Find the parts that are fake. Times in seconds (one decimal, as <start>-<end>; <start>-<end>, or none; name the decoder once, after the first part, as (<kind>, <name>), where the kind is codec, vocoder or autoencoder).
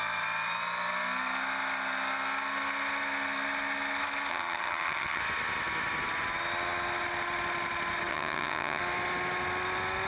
4.3-5.2 (vocoder, HiFi-GAN); 8.1-8.8